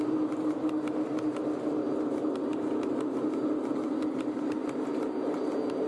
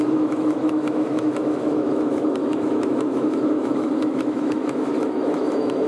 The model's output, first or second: second